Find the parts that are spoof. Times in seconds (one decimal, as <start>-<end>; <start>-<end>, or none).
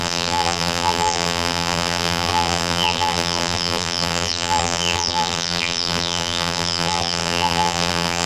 0.0-8.3